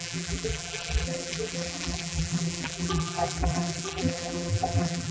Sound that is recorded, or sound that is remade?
remade